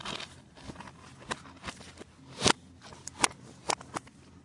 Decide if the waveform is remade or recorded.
recorded